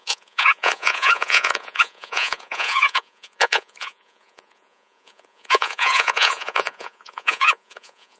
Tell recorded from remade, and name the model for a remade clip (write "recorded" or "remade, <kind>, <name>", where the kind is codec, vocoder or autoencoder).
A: remade, vocoder, Vocos